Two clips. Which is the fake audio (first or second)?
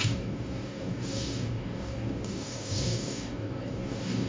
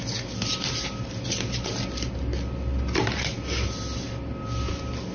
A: first